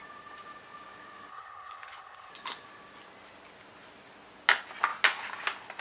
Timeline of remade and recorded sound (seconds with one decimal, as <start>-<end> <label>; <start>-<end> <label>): 0.0-1.3 recorded; 1.3-2.3 remade; 2.3-5.8 recorded